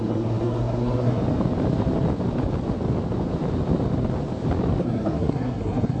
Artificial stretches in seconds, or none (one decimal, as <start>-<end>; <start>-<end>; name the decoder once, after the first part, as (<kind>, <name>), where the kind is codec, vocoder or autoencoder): 0.0-1.2 (codec, SNAC); 4.8-6.0